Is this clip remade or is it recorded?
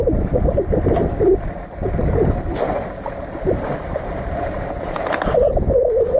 recorded